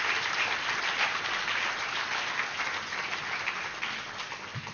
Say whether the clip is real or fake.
real